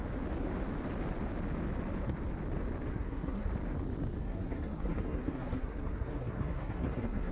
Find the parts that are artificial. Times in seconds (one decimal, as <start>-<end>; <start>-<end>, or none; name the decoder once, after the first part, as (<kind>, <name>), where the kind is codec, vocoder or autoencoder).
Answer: 2.9-3.5 (codec, SNAC); 4.2-7.3